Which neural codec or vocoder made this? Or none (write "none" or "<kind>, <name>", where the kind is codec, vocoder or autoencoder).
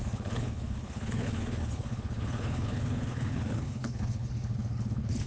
codec, HILCodec